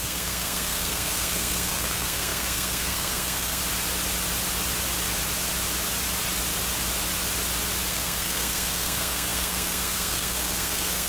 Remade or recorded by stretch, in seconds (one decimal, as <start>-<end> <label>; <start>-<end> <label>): 0.0-3.6 remade; 3.6-7.9 recorded; 7.9-11.1 remade